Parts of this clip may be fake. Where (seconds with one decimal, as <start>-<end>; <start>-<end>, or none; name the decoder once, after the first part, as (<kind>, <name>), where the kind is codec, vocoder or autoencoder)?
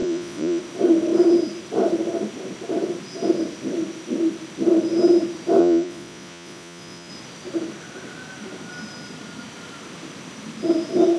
0.0-0.6 (vocoder, Vocos); 5.6-7.1